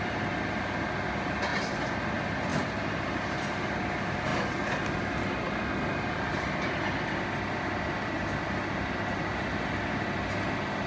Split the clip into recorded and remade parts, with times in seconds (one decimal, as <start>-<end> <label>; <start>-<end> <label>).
0.0-1.5 recorded; 1.5-2.0 remade; 2.0-2.5 recorded; 2.5-3.4 remade; 3.4-10.9 recorded